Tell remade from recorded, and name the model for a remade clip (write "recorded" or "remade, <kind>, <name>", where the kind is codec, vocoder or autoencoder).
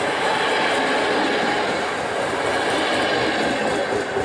recorded